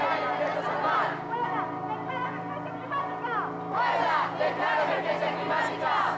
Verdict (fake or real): real